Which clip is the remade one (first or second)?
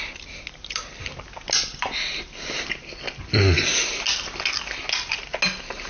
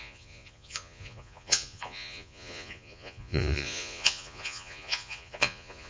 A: second